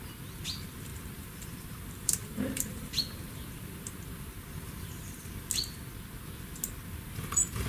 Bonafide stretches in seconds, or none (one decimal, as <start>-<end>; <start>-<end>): 0.0-0.9; 5.3-7.7